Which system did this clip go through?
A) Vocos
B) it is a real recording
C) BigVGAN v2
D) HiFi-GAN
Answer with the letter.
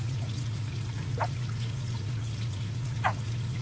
A